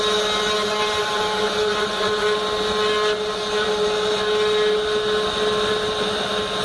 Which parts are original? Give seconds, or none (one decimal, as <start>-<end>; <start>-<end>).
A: 0.0-6.6